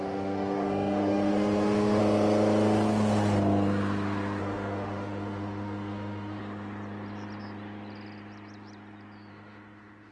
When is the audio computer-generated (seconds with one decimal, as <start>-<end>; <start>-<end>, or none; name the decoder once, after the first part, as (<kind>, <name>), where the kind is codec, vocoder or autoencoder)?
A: 0.0-2.0 (autoencoder, DAC-VAE); 4.4-6.4; 9.3-10.1